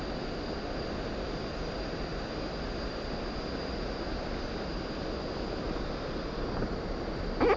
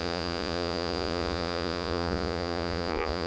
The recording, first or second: first